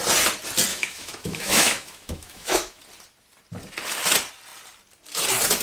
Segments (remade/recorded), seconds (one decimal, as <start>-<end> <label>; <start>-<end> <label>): 0.0-0.7 recorded; 0.7-2.8 remade; 2.8-5.6 recorded